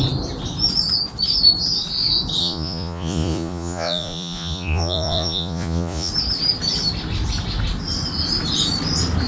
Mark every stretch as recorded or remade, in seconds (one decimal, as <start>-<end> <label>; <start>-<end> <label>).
0.0-2.4 recorded; 2.4-6.1 remade; 6.1-9.3 recorded